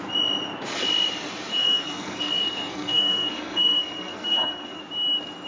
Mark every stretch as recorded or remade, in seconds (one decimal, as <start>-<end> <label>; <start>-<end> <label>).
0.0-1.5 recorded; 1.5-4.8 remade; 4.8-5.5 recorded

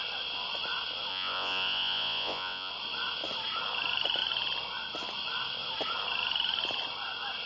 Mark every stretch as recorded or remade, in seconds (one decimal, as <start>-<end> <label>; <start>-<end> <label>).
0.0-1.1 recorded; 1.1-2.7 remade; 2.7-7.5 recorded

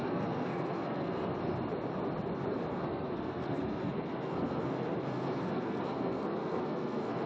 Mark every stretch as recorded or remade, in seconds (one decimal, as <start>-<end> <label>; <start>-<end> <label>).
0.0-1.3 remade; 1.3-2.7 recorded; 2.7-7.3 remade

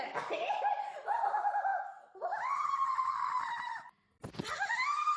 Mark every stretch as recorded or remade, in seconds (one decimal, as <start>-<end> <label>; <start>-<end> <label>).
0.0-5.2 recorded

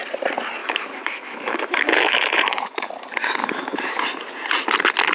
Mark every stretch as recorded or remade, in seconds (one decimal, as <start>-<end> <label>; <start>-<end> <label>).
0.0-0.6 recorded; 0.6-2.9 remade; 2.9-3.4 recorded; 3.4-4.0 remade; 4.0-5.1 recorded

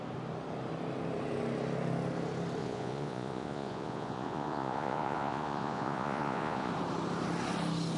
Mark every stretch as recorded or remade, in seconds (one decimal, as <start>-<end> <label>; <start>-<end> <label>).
0.0-2.6 recorded; 2.6-6.7 remade; 6.7-8.0 recorded